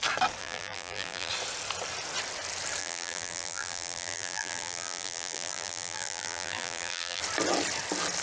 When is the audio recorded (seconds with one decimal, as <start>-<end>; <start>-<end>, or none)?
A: 0.0-0.4; 1.3-2.8; 7.2-8.2